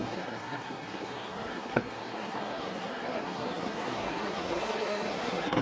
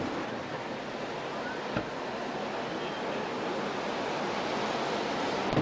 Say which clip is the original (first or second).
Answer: second